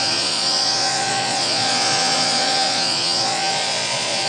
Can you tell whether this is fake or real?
fake